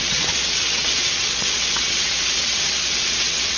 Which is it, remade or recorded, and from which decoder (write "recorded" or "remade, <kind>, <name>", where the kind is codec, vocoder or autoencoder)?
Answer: remade, vocoder, WaveNeXt